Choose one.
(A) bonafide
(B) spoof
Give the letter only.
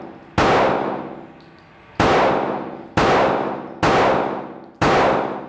A